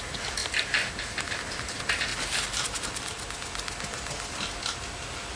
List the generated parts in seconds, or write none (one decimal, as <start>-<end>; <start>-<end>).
none